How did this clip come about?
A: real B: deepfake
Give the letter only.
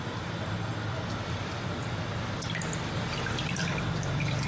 A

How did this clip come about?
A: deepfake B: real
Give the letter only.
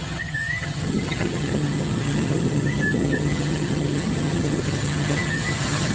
A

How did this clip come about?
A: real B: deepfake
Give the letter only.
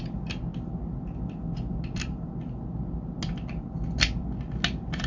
A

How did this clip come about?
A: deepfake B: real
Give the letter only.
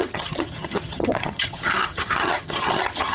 A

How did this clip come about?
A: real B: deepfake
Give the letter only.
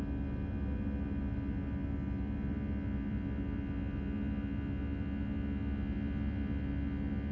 A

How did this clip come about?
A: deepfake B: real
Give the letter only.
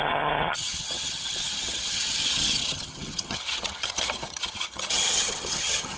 A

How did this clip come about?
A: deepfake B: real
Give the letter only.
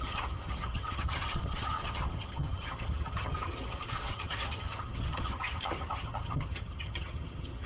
A